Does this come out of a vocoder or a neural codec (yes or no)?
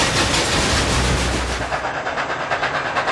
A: no